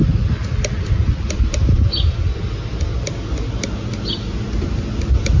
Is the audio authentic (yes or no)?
yes